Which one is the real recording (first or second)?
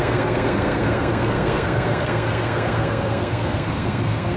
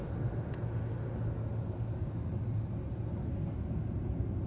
second